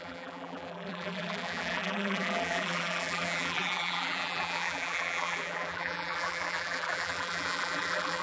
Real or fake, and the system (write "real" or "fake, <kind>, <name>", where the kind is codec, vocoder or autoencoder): fake, vocoder, BigVGAN v2